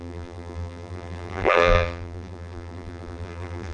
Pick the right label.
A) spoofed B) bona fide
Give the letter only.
A